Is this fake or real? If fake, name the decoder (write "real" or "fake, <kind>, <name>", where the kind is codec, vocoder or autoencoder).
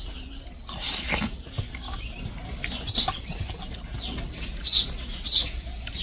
real